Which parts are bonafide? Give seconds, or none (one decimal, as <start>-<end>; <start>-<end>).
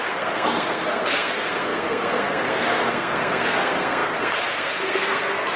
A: none